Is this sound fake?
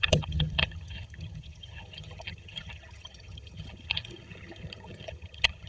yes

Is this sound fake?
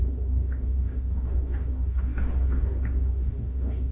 yes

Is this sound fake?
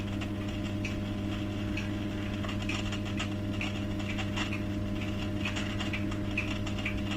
no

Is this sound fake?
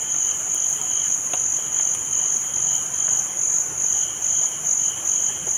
no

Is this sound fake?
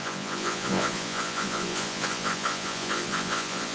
yes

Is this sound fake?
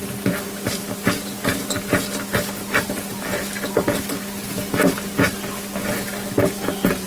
no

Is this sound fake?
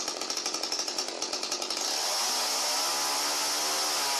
no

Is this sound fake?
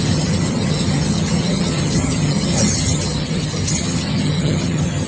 yes